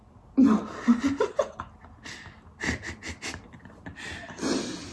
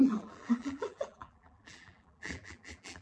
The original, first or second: first